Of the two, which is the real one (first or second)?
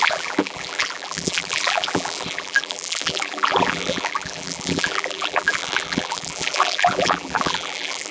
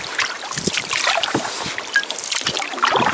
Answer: second